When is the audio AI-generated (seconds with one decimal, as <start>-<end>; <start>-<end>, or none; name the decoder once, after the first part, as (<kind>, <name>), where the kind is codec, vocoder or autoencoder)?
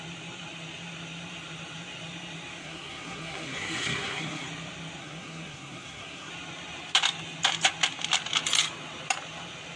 2.6-4.5 (codec, SNAC); 5.0-6.3